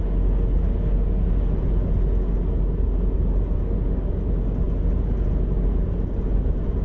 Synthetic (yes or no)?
no